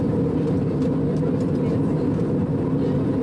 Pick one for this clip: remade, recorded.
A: recorded